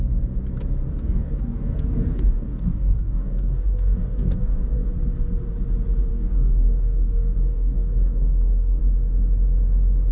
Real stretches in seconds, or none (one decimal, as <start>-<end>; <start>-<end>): 0.0-0.8; 4.9-6.1; 8.8-10.1